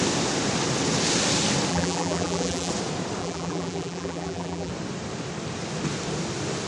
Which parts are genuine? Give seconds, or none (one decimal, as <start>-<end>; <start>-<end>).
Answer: 0.0-1.7; 2.7-3.2; 4.7-6.7